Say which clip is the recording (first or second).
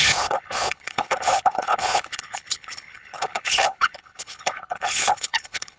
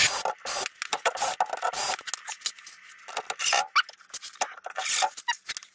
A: second